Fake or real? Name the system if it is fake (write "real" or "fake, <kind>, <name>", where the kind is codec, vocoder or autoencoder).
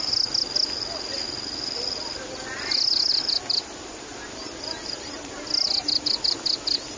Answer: real